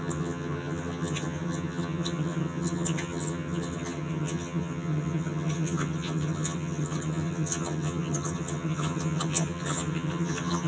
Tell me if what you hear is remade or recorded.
remade